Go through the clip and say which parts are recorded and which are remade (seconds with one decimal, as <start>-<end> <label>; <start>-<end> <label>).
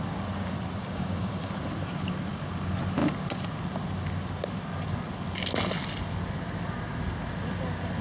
0.0-0.8 recorded; 0.8-1.5 remade; 1.5-8.0 recorded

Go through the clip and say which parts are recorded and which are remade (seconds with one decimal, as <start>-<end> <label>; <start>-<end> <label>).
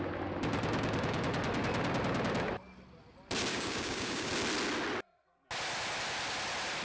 0.0-3.5 recorded; 3.5-4.3 remade; 4.3-6.8 recorded